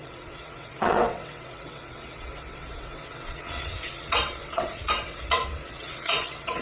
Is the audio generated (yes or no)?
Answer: yes